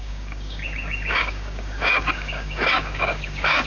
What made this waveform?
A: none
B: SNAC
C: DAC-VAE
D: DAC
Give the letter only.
D